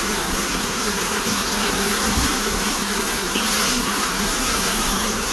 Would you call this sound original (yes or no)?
no